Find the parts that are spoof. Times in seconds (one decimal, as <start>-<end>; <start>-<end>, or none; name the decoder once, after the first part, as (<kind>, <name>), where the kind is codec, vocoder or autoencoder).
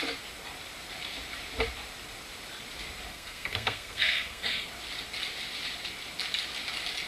3.1-4.7 (codec, SNAC)